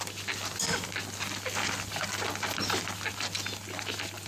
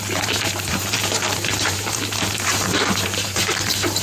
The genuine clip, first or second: first